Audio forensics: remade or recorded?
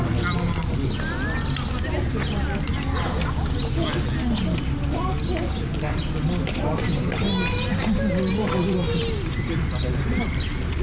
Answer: recorded